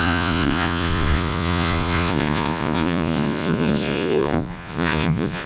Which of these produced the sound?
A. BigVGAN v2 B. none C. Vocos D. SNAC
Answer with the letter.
C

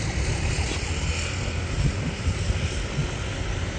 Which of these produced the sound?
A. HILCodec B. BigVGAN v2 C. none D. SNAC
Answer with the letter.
C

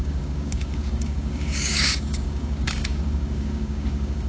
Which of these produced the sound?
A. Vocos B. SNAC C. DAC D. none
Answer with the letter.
C